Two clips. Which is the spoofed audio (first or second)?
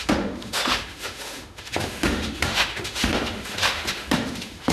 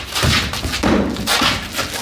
first